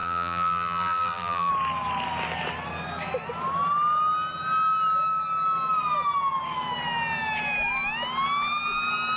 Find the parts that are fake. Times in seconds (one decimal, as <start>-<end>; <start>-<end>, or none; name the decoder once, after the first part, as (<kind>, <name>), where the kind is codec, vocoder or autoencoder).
0.0-1.5 (vocoder, BigVGAN v2)